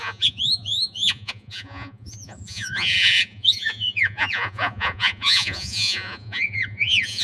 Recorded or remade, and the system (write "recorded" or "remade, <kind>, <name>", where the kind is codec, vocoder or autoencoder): remade, vocoder, Vocos